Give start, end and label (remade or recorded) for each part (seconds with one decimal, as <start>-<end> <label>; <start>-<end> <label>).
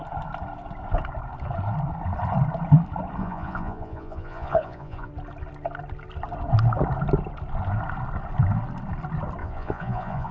0.0-3.2 recorded; 3.2-5.1 remade; 5.1-9.4 recorded; 9.4-10.3 remade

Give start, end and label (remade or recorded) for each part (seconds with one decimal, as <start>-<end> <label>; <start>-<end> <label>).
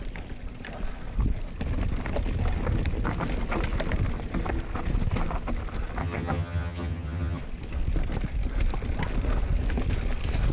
0.0-6.0 recorded; 6.0-7.4 remade; 7.4-10.5 recorded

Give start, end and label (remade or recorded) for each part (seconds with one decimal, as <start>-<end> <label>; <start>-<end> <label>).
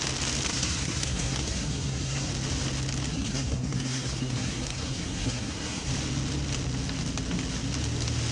0.0-0.5 recorded; 0.5-2.3 remade; 2.3-3.1 recorded; 3.1-5.9 remade; 5.9-8.3 recorded